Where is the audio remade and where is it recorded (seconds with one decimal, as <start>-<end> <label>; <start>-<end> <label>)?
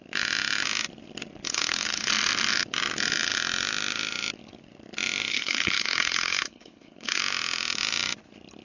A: 0.0-1.5 recorded; 1.5-2.1 remade; 2.1-5.3 recorded; 5.3-7.2 remade; 7.2-8.6 recorded